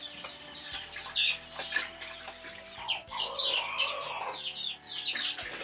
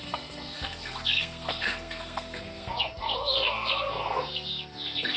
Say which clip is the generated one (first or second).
second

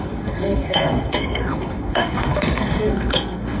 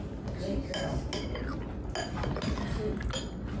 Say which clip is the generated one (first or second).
first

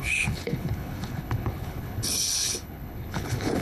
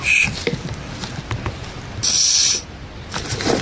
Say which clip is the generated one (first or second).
first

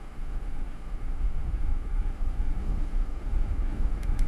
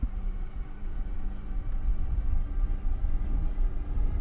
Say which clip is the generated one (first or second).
first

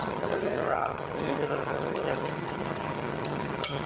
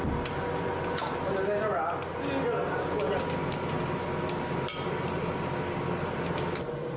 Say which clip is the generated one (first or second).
first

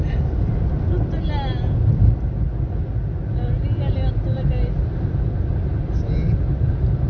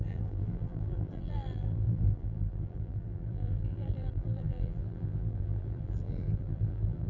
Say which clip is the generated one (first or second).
second